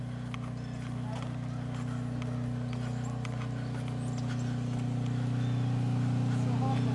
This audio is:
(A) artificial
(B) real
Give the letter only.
B